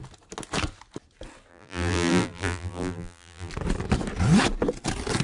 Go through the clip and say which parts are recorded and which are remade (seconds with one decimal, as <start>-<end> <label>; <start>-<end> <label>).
0.0-1.5 recorded; 1.5-3.5 remade; 3.5-5.2 recorded